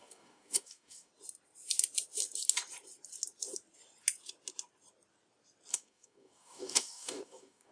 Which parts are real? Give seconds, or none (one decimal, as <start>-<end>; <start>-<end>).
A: 1.1-5.7